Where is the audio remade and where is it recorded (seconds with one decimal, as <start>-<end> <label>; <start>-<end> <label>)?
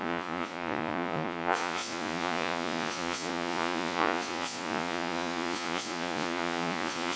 0.0-7.2 remade